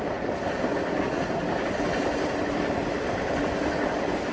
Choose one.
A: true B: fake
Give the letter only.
A